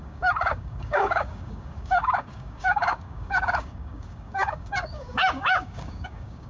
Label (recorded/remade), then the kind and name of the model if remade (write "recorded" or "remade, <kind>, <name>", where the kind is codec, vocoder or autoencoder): remade, codec, DAC